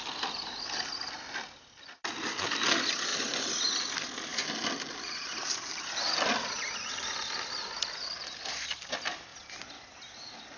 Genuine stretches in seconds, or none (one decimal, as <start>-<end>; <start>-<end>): 0.0-10.6